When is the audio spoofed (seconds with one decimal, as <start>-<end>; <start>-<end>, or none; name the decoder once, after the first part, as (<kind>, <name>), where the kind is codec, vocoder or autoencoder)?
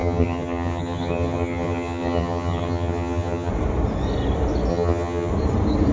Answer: 0.0-3.5 (vocoder, HiFi-GAN); 4.7-5.3